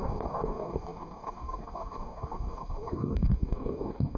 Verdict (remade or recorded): remade